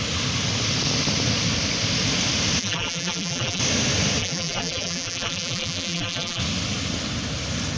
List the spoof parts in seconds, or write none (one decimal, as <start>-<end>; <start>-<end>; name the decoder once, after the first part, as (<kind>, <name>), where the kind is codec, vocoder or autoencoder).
2.6-3.6 (vocoder, BigVGAN v2); 4.2-6.4